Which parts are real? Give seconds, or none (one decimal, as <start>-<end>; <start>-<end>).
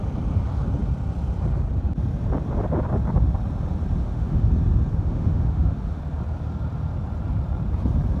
0.0-4.0; 4.5-4.9; 6.0-8.2